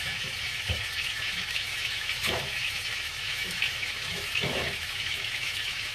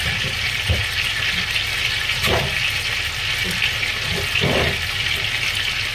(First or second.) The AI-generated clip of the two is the first